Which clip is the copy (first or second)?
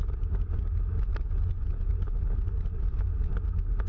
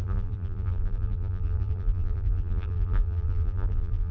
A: second